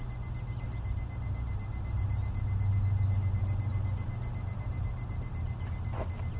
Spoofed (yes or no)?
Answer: no